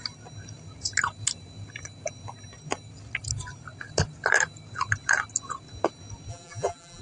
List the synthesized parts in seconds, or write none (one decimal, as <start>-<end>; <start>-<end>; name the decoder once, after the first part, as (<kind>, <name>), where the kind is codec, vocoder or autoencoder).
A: 6.3-7.0 (vocoder, BigVGAN v2)